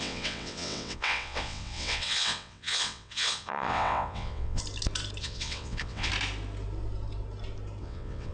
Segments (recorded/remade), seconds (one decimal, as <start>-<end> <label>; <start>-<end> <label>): 0.0-4.6 remade; 4.6-5.2 recorded; 5.2-6.1 remade; 6.1-7.8 recorded; 7.8-8.3 remade